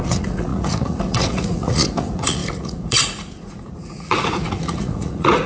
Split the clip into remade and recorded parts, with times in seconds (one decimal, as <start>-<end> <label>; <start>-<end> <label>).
0.0-5.5 remade